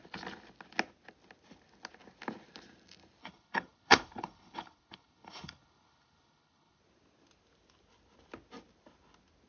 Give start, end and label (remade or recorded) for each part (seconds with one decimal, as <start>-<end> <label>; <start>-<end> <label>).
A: 0.0-3.2 recorded; 3.2-6.8 remade; 6.8-9.5 recorded